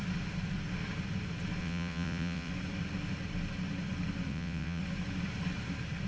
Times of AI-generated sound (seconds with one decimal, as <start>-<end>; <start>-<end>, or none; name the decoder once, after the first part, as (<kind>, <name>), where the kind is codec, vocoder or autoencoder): 1.6-2.5 (vocoder, WaveNeXt); 4.3-4.8